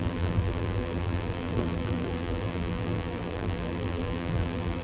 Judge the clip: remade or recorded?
remade